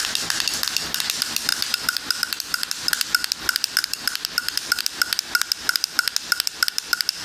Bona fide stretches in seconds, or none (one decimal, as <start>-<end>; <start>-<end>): 0.0-1.5; 2.9-3.8; 4.8-7.2